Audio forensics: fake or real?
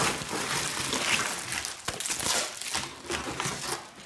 real